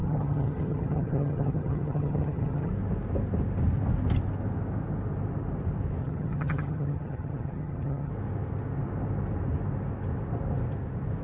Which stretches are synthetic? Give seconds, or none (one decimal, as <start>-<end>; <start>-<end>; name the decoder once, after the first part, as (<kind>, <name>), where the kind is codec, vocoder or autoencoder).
0.0-2.7 (vocoder, HiFi-GAN); 6.0-8.1